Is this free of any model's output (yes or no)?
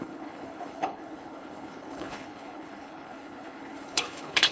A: no